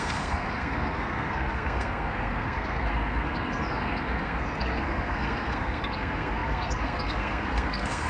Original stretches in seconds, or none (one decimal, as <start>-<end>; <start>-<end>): none